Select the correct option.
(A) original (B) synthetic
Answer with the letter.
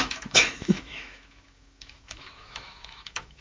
B